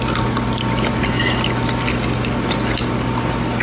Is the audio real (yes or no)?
yes